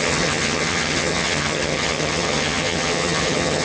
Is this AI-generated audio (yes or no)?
yes